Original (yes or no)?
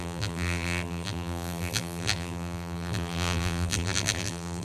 no